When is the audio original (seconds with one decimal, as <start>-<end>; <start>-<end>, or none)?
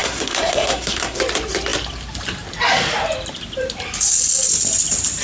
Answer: 1.2-5.2